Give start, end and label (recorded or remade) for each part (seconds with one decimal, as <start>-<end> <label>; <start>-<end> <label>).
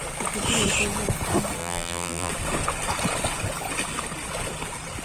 0.0-1.6 recorded; 1.6-2.3 remade; 2.3-5.0 recorded